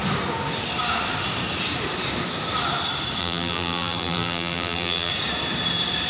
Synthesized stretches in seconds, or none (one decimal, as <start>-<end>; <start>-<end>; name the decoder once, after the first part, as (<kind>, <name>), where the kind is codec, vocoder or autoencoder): 3.2-5.1 (vocoder, BigVGAN v2)